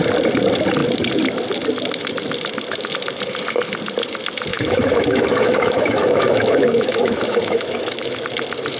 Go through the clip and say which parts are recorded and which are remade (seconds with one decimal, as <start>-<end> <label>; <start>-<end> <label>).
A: 0.0-4.5 recorded; 4.5-8.2 remade; 8.2-8.8 recorded